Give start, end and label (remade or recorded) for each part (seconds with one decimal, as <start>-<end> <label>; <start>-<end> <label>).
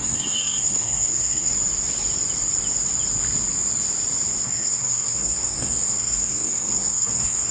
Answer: 0.0-1.5 remade; 1.5-4.4 recorded; 4.4-7.5 remade